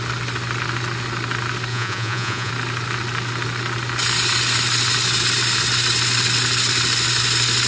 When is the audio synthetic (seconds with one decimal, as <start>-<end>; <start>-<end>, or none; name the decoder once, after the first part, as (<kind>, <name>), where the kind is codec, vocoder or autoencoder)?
1.7-2.5 (vocoder, Vocos)